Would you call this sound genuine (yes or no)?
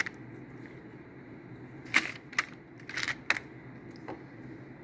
yes